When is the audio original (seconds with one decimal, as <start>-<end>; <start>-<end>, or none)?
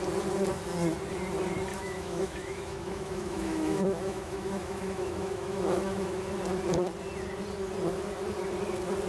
0.0-1.7; 6.3-9.1